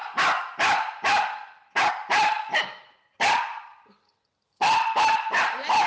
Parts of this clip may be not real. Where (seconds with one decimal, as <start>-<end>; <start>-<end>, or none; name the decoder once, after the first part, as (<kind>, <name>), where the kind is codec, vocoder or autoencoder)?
none